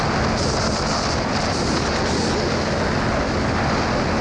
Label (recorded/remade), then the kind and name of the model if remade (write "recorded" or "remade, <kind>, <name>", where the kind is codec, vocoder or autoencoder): recorded